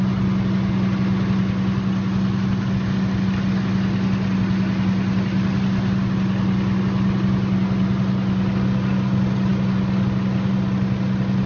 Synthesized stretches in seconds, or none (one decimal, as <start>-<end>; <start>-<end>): none